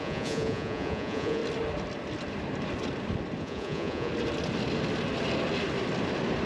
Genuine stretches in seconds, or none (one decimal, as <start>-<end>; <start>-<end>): 1.4-3.4; 4.1-6.5